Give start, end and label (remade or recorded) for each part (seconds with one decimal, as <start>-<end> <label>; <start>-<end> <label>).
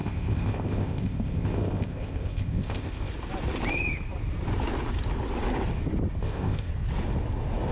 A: 0.0-3.1 remade; 3.1-6.2 recorded; 6.2-6.7 remade; 6.7-7.7 recorded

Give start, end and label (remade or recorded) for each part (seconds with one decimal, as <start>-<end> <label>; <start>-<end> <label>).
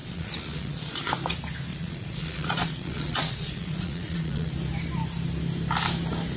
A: 0.0-1.1 remade; 1.1-1.7 recorded; 1.7-4.5 remade; 4.5-6.4 recorded